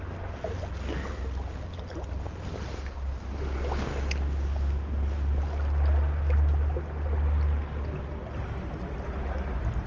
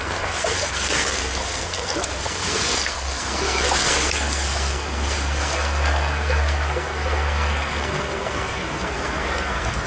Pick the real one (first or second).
first